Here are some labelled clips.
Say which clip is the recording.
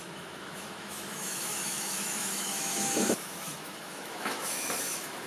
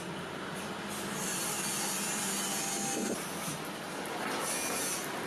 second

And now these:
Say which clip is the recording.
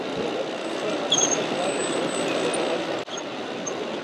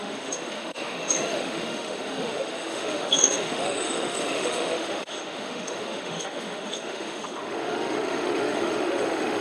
first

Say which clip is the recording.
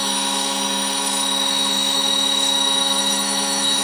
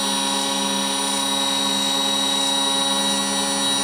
second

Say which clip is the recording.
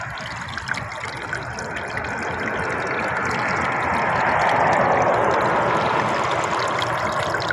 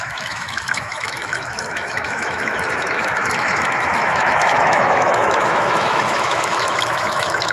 first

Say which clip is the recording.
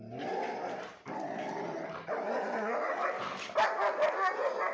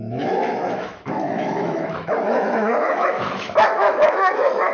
first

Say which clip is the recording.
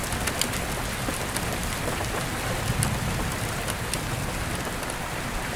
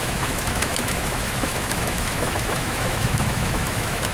first